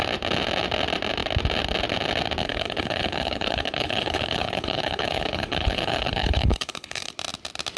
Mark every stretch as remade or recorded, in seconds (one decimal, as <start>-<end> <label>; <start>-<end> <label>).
0.0-2.4 recorded; 2.4-7.1 remade; 7.1-7.8 recorded